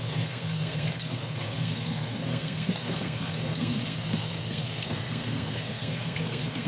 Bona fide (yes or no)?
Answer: no